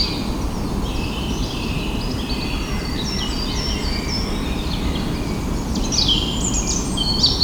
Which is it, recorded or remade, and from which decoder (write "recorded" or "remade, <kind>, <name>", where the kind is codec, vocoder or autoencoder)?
recorded